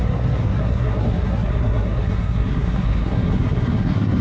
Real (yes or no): no